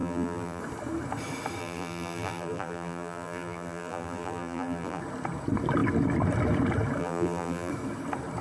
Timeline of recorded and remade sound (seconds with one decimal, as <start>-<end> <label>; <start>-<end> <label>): 0.0-0.6 remade; 0.6-1.6 recorded; 1.6-5.0 remade; 5.0-7.0 recorded; 7.0-7.7 remade; 7.7-8.4 recorded